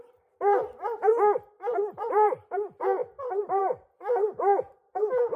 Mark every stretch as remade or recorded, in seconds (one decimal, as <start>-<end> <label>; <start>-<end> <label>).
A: 0.0-1.1 remade; 1.1-1.7 recorded; 1.7-5.4 remade